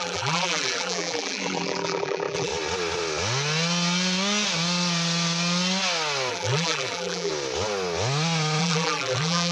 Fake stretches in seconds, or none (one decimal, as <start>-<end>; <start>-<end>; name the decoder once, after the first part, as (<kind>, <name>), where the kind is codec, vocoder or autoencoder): 0.0-2.5 (vocoder, BigVGAN v2); 6.3-7.3; 8.6-9.5